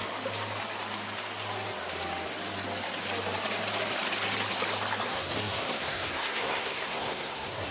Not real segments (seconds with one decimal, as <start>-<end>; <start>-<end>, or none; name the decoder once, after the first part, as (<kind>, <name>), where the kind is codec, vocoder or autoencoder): 5.1-7.7 (codec, SNAC)